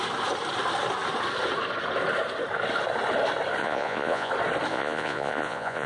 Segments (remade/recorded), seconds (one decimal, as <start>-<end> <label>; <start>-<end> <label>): 0.0-3.6 recorded; 3.6-4.3 remade; 4.3-4.7 recorded; 4.7-5.9 remade

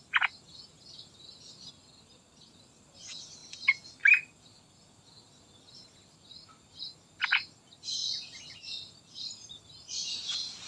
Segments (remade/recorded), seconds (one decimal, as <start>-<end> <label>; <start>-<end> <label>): 0.0-10.7 recorded

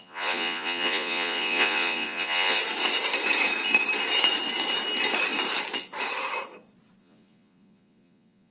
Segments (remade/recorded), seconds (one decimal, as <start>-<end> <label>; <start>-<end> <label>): 0.0-2.6 remade; 2.6-7.0 recorded; 7.0-8.5 remade

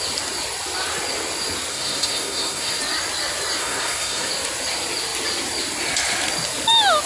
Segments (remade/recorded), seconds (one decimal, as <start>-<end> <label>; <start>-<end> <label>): 0.0-1.7 recorded; 1.7-2.8 remade; 2.8-3.6 recorded; 3.6-4.3 remade; 4.3-7.1 recorded

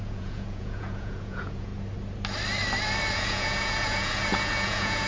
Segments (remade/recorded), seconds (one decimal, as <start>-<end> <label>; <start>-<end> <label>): 0.0-1.7 remade; 1.7-3.1 recorded; 3.1-5.1 remade

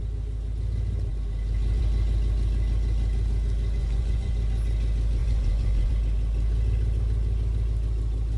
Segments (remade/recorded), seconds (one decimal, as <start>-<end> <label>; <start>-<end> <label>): 0.0-3.8 recorded; 3.8-4.3 remade; 4.3-5.2 recorded; 5.2-5.9 remade; 5.9-8.4 recorded